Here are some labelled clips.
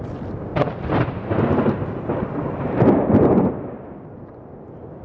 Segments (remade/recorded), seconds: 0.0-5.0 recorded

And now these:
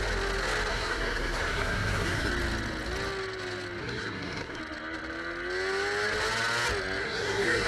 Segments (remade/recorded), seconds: 0.0-0.7 recorded; 0.7-2.3 remade; 2.3-3.8 recorded; 3.8-4.6 remade; 4.6-7.0 recorded; 7.0-7.7 remade

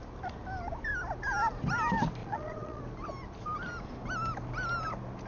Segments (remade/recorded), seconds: 0.0-2.2 recorded; 2.2-2.8 remade; 2.8-5.3 recorded

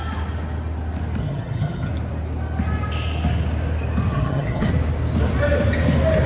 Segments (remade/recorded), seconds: 0.0-1.2 recorded; 1.2-1.9 remade; 1.9-4.1 recorded; 4.1-4.7 remade; 4.7-6.3 recorded

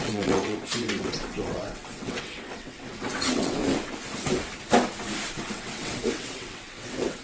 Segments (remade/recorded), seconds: 0.0-3.6 remade; 3.6-5.4 recorded; 5.4-7.2 remade

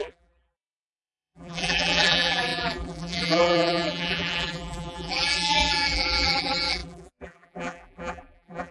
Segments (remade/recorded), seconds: 0.0-8.7 remade